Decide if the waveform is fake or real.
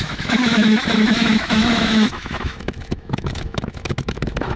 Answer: fake